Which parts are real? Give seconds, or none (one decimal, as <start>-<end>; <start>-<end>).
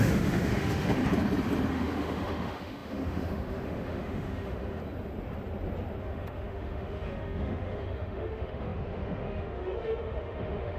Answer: 1.0-1.7; 4.8-6.0